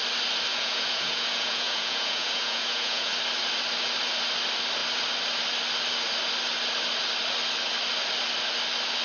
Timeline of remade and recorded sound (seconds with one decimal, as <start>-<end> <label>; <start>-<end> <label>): 0.0-0.5 recorded; 0.5-3.1 remade; 3.1-9.0 recorded